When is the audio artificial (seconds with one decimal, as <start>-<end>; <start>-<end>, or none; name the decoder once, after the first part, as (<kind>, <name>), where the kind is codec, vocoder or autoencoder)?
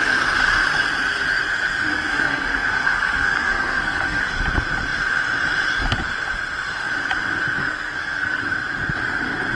1.9-4.2 (codec, SNAC); 7.6-8.4